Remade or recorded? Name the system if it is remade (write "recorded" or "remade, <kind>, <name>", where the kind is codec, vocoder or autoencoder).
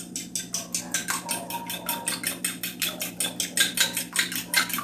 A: recorded